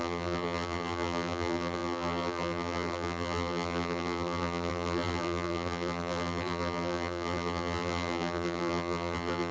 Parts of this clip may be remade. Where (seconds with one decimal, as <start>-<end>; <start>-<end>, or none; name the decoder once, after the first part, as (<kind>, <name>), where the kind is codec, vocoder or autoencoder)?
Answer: 0.0-9.5 (vocoder, BigVGAN v2)